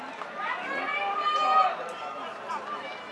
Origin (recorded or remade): recorded